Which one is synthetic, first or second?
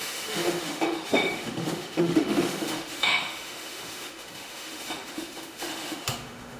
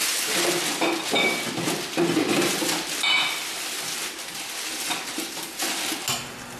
first